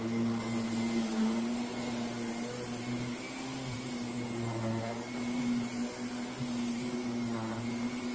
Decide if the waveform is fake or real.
real